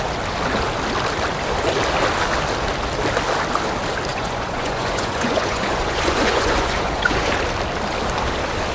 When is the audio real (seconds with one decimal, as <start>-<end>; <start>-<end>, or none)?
0.0-4.1; 7.3-8.7

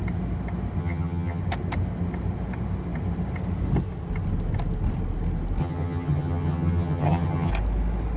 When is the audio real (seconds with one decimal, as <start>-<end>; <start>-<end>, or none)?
0.0-0.8; 1.4-5.6; 7.5-8.2

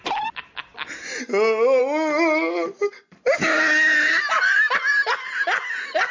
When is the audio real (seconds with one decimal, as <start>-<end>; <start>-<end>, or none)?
0.0-6.1

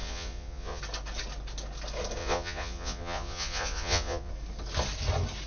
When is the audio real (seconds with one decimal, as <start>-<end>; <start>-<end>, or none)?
0.8-2.2; 4.3-5.5

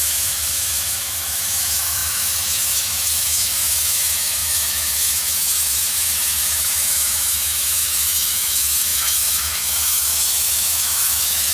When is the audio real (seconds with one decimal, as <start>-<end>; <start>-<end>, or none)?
none

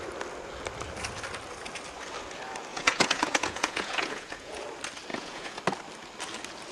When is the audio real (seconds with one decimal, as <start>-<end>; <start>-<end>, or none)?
0.0-2.7; 4.6-5.1; 5.6-6.7

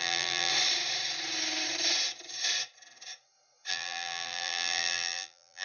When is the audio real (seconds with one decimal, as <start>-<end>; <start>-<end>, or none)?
0.5-3.7